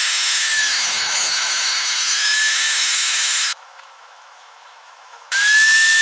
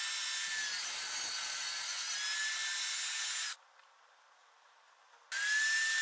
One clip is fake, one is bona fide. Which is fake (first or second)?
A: first